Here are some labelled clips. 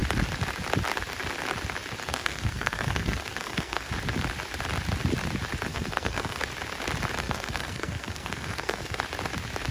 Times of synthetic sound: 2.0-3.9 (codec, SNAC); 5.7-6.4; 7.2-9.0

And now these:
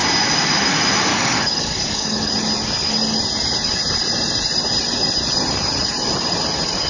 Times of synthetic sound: 1.1-2.3 (codec, DAC)

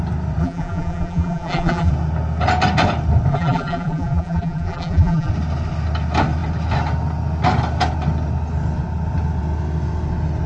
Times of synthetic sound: 0.4-1.9 (vocoder, BigVGAN v2); 3.3-5.3

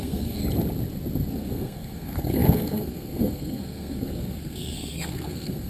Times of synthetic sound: 0.0-0.4 (codec, SNAC); 1.3-5.7

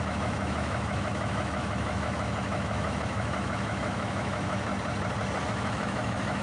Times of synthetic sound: 0.0-4.7 (autoencoder, DAC-VAE); 5.4-6.4